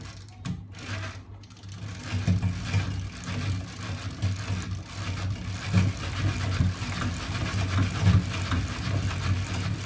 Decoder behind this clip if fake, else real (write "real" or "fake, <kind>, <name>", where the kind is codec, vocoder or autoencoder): real